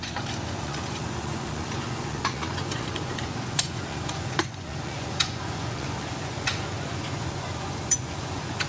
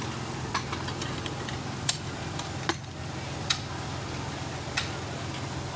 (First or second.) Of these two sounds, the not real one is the first